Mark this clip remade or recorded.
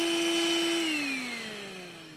recorded